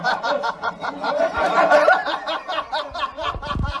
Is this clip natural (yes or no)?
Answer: no